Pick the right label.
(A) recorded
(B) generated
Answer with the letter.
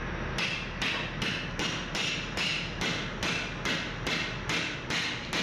A